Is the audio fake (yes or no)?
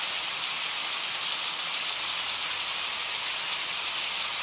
no